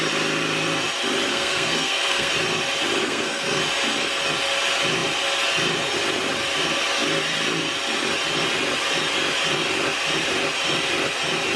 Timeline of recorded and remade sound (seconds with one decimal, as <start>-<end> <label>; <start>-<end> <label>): 0.0-1.3 recorded; 1.3-2.3 remade; 2.3-3.0 recorded; 3.0-3.6 remade; 3.6-11.6 recorded